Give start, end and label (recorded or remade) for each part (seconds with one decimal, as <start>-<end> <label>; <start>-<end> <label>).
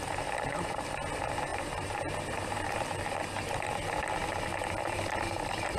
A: 0.0-5.8 recorded